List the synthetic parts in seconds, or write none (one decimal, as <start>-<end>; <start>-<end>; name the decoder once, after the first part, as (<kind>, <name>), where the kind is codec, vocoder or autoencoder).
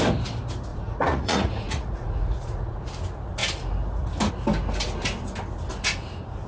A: 0.7-2.8 (vocoder, Vocos)